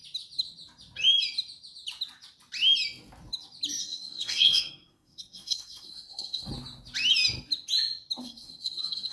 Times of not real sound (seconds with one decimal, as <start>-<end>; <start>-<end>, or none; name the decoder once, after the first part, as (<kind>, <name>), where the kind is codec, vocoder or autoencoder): 3.8-6.5 (codec, SNAC); 8.2-9.1